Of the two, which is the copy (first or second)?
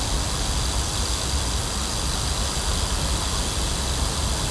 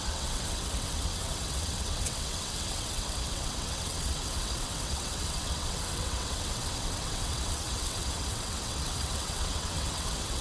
second